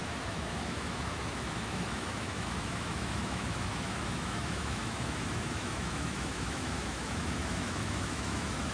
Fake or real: fake